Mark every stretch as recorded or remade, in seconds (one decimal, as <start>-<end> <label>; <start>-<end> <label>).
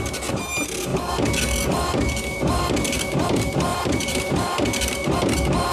0.0-3.7 recorded; 3.7-4.3 remade; 4.3-5.7 recorded